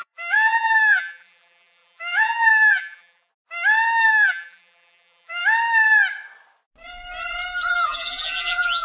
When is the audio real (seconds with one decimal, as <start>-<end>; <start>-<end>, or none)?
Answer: 3.3-4.1; 5.4-7.7